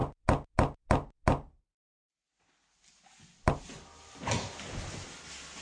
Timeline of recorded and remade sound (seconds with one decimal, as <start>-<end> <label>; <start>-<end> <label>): 0.0-5.6 recorded